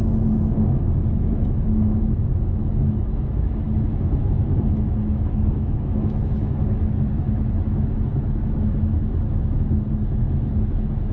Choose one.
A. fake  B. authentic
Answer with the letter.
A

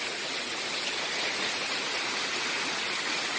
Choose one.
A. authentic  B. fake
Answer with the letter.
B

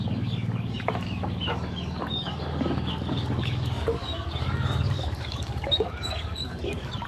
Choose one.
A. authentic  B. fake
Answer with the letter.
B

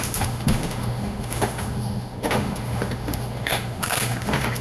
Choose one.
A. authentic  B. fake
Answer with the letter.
B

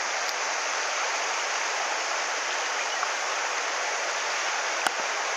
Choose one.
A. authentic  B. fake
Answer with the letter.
A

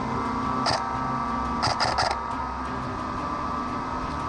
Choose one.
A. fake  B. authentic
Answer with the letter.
B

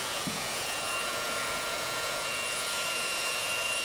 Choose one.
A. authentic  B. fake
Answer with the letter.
B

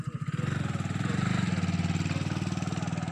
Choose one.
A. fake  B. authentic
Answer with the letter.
B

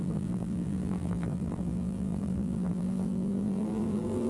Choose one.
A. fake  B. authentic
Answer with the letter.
A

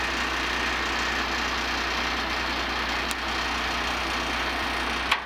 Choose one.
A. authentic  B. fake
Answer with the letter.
A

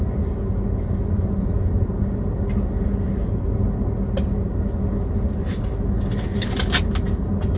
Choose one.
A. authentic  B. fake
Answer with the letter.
A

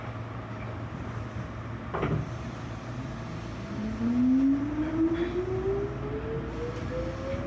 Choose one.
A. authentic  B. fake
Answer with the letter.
A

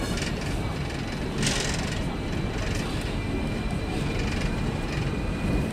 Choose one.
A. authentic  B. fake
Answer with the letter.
A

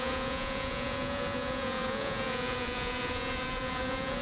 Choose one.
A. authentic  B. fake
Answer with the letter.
B